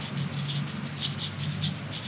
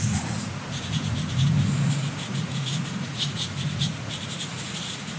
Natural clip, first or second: first